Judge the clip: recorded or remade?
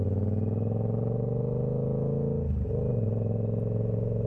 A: recorded